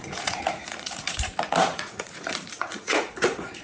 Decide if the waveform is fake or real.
fake